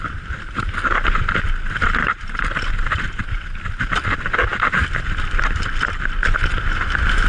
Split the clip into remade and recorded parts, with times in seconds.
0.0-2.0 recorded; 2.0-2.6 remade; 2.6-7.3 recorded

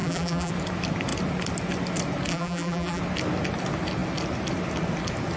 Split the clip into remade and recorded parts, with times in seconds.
0.0-0.5 remade; 0.5-2.3 recorded; 2.3-3.0 remade; 3.0-5.4 recorded

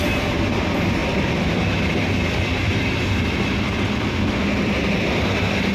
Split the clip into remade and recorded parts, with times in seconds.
0.0-5.7 recorded

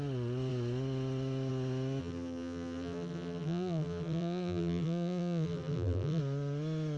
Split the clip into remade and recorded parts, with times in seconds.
0.0-2.0 recorded; 2.0-6.2 remade; 6.2-7.0 recorded

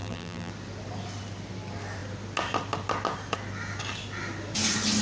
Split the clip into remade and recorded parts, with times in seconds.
0.0-0.5 remade; 0.5-5.0 recorded

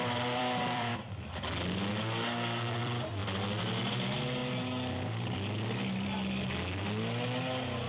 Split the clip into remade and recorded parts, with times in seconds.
0.0-0.9 remade; 0.9-2.8 recorded; 2.8-3.2 remade; 3.2-3.9 recorded; 3.9-4.4 remade; 4.4-7.9 recorded